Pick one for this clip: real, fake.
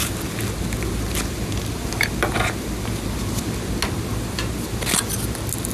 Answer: real